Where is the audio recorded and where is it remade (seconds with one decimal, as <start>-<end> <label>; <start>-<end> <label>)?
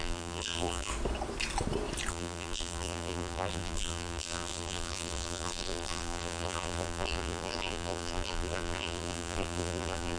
0.0-0.9 remade; 0.9-2.1 recorded; 2.1-10.2 remade